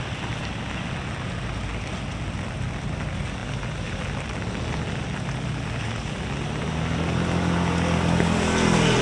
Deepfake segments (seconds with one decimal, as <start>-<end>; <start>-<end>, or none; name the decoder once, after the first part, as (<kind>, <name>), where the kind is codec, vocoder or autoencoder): none